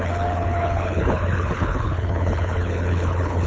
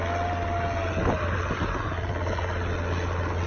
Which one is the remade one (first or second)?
first